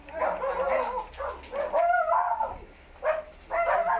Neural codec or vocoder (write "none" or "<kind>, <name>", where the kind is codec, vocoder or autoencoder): none